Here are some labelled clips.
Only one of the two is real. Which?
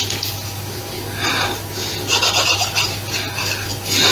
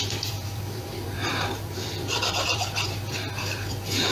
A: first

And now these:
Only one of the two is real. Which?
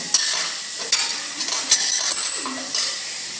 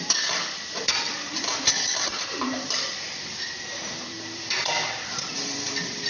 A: first